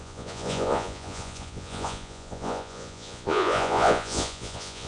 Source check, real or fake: fake